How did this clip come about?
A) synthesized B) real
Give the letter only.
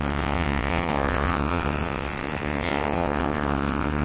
A